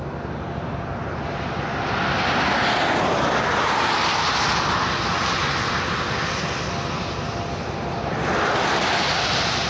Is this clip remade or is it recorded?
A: recorded